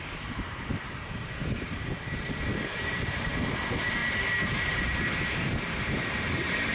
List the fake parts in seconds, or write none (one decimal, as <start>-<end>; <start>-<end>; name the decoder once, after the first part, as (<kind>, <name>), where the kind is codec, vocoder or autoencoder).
0.0-6.7 (vocoder, BigVGAN v2)